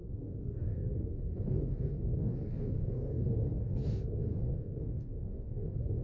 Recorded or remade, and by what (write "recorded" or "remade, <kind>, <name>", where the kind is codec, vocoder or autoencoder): remade, codec, DAC